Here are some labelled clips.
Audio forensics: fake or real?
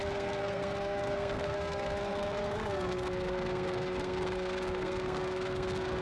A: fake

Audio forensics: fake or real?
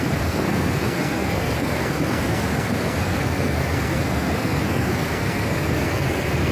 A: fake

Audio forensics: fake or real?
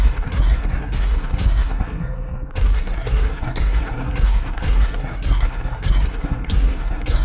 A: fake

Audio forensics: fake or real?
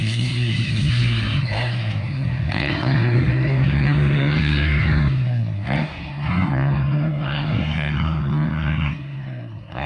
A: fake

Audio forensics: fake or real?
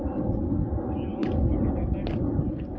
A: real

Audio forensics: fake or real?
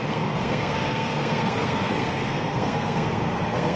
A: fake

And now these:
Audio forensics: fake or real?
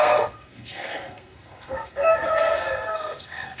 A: fake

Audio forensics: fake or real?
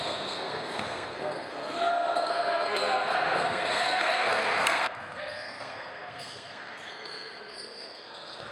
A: fake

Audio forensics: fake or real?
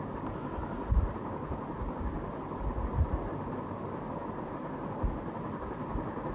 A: real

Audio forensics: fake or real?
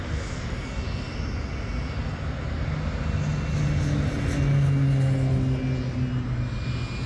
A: real